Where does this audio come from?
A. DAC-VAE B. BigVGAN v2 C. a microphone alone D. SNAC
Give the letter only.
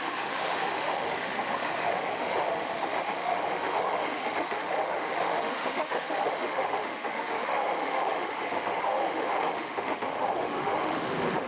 A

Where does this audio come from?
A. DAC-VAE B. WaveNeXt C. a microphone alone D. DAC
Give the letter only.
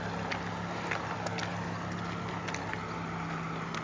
C